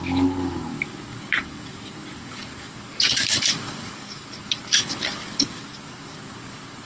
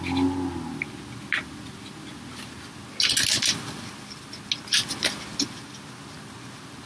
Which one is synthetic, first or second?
first